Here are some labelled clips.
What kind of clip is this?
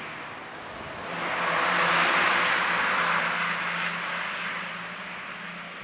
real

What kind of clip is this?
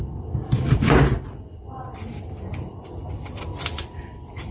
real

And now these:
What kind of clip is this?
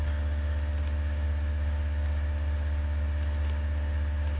real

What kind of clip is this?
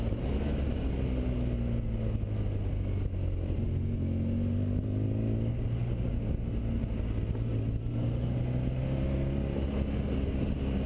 real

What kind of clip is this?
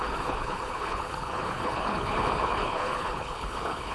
fake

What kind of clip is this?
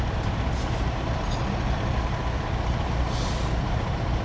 real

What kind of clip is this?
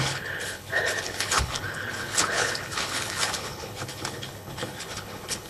fake